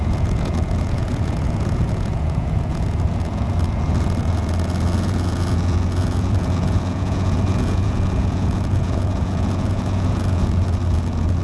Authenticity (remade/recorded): remade